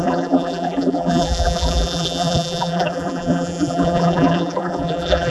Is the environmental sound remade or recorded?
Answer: remade